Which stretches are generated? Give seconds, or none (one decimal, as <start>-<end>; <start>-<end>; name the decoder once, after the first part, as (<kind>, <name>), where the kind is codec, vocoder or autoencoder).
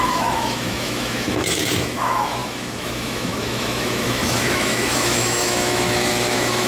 0.0-6.7 (autoencoder, DAC-VAE)